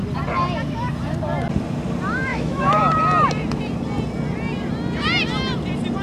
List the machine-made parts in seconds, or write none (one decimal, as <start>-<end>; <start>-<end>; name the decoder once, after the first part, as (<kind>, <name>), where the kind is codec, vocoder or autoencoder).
2.3-2.8 (autoencoder, DAC-VAE)